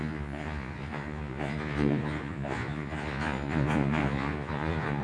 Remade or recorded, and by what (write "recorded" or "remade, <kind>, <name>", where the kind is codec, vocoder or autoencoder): remade, vocoder, Vocos